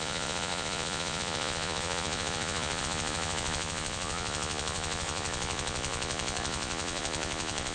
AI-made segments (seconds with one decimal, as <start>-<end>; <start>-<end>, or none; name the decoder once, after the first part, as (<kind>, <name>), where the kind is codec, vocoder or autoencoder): 0.0-7.7 (vocoder, Vocos)